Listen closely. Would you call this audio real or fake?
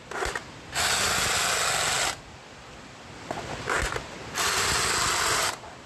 real